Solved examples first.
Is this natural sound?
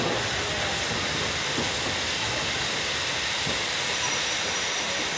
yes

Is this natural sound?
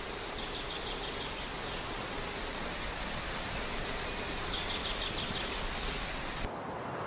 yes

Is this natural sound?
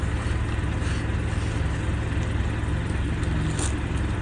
yes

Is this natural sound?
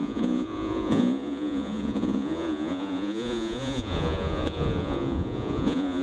no